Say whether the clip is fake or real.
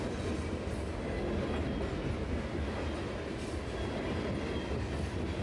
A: real